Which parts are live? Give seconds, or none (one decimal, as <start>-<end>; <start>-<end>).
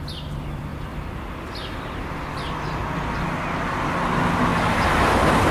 0.0-4.5